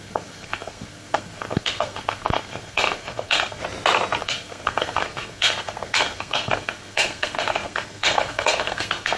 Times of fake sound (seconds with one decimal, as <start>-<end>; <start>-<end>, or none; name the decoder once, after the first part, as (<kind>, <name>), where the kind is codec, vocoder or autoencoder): 0.0-3.6 (codec, SNAC); 4.2-9.2